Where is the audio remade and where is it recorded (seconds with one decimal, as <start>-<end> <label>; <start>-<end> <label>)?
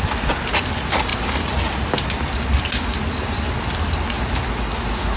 0.0-5.2 recorded